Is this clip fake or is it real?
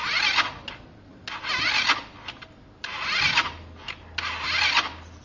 real